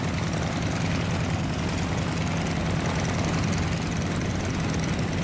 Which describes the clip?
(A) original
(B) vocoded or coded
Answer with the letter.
A